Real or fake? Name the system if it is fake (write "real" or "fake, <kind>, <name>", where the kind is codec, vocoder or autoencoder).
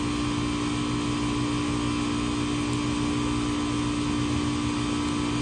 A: real